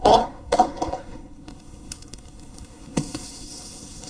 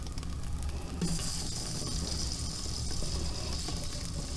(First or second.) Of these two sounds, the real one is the second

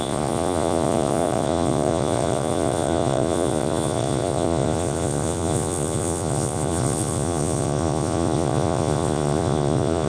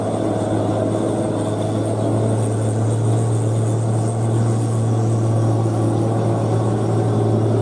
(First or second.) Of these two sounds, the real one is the second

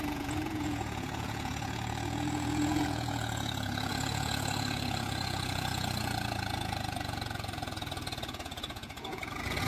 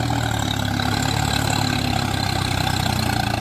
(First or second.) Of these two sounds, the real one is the second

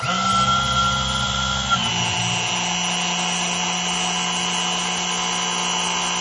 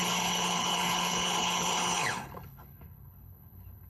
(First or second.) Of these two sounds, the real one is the first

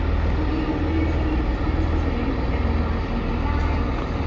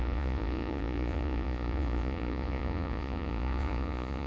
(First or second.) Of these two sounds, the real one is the first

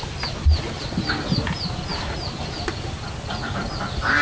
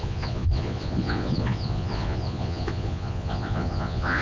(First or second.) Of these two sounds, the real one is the first